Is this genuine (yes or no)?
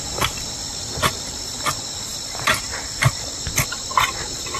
yes